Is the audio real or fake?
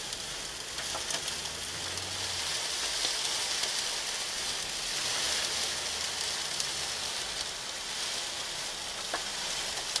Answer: real